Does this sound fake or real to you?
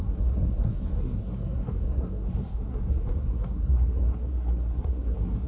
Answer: fake